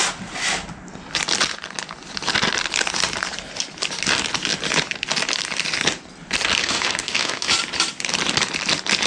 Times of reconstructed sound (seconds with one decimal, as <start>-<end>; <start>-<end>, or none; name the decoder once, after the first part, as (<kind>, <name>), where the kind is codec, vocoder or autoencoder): 6.6-7.5 (autoencoder, DAC-VAE)